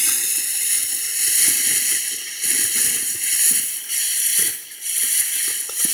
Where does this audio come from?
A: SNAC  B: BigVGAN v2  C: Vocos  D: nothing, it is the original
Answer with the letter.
D